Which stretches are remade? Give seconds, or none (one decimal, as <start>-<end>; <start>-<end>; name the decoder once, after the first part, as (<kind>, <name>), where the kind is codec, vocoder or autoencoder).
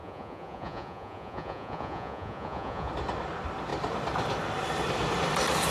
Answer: 0.0-2.9 (vocoder, Vocos)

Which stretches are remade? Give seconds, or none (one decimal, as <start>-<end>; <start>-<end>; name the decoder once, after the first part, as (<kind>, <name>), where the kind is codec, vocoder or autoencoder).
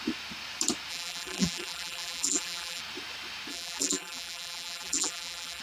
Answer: 0.9-2.8 (vocoder, BigVGAN v2); 3.5-5.6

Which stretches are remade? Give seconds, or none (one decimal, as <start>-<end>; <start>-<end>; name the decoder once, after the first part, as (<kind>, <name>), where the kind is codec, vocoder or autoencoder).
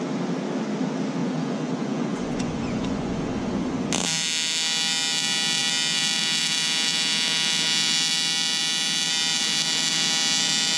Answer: 1.2-3.9 (vocoder, Vocos)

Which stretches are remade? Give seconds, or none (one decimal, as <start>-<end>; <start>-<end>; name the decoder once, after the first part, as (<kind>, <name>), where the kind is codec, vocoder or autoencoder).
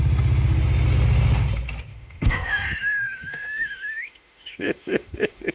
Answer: 1.9-5.5 (autoencoder, DAC-VAE)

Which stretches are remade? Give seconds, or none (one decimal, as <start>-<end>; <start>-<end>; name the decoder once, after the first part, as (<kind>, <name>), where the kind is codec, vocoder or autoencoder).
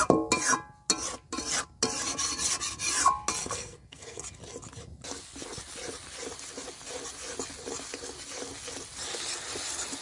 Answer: 3.4-4.2 (codec, SNAC)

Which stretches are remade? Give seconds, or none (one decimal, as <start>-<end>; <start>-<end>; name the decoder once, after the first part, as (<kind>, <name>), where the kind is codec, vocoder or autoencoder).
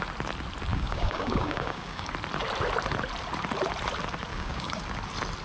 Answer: 0.7-2.1 (codec, DAC); 4.3-4.8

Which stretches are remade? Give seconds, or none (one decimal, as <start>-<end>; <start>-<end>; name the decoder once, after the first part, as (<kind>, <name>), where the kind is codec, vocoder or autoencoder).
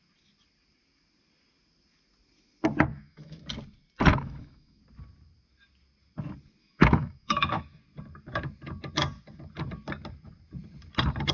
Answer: 2.9-3.4 (autoencoder, DAC-VAE); 4.1-4.8; 6.6-7.8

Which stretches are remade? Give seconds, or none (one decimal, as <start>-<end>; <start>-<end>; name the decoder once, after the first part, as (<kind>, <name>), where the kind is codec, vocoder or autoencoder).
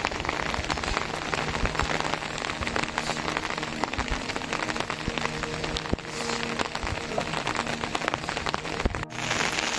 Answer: 3.7-4.3 (vocoder, BigVGAN v2); 7.9-8.8